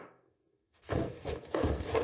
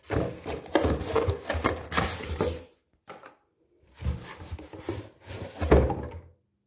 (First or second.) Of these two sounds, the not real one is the first